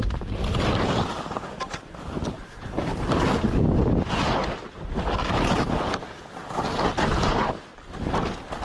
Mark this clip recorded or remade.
recorded